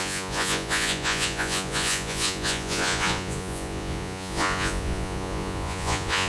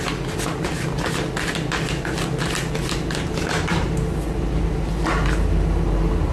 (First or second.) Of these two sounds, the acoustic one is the second